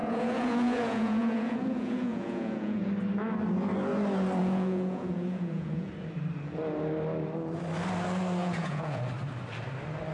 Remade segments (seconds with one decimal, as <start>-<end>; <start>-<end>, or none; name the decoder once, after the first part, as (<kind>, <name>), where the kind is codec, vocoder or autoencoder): 0.0-2.9 (vocoder, Vocos); 4.4-5.9; 8.4-9.0